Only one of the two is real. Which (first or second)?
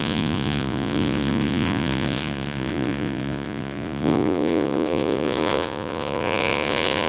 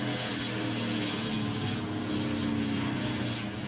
second